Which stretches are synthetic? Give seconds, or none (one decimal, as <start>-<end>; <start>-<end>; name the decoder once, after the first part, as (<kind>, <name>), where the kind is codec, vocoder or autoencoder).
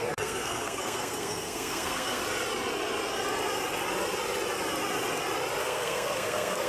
0.0-2.2 (codec, SNAC); 5.6-6.7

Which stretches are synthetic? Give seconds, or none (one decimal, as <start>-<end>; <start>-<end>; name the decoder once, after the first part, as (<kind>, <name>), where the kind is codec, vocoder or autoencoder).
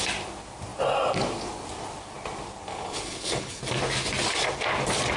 2.7-3.6 (codec, HILCodec)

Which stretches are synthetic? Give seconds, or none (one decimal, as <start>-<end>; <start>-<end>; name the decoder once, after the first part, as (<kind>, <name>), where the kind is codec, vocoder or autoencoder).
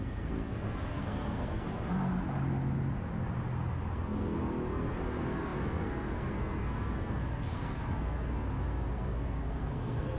0.0-2.1 (codec, SNAC); 3.9-10.2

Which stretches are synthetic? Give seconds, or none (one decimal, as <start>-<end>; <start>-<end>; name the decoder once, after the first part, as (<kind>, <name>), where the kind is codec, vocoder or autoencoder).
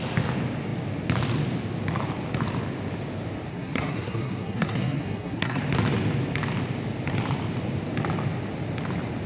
3.5-5.6 (codec, SNAC)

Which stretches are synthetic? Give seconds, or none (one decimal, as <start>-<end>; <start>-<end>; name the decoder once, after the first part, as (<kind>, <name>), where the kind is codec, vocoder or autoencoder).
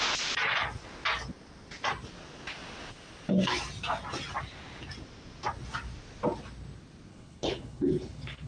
7.1-8.5 (codec, HILCodec)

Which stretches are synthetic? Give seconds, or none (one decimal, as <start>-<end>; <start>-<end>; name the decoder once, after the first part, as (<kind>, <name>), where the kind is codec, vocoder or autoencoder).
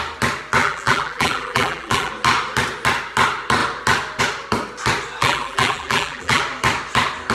0.6-2.1 (vocoder, BigVGAN v2); 5.2-6.4